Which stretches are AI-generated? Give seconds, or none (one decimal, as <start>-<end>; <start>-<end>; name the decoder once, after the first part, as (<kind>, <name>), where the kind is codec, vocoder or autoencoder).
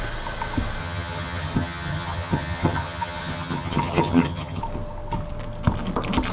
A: 0.8-4.6 (vocoder, HiFi-GAN)